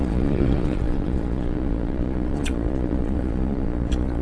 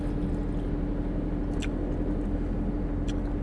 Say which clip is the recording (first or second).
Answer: second